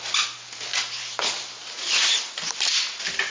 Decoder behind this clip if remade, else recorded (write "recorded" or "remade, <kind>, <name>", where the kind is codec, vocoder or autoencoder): recorded